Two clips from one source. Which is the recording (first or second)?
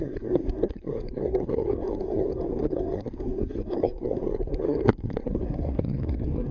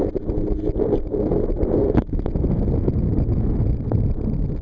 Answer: second